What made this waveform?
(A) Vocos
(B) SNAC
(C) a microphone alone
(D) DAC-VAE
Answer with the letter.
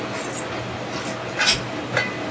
C